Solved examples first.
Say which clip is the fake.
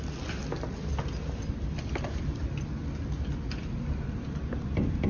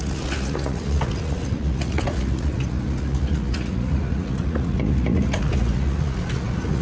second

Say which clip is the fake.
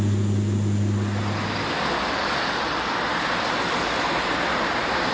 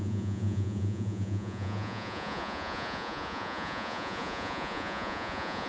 second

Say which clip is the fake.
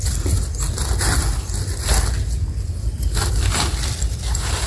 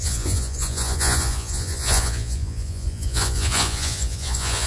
second